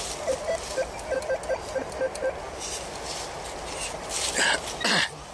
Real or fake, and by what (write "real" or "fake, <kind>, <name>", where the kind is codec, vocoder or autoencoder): real